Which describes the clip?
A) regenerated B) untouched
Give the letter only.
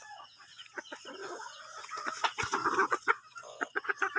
A